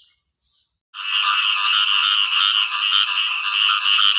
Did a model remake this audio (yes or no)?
no